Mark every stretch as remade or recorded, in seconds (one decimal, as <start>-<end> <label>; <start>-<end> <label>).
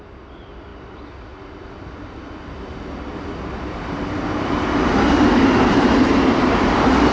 0.0-7.1 recorded